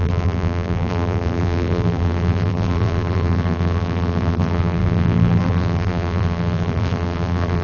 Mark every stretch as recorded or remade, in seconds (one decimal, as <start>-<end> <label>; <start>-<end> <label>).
0.0-7.6 remade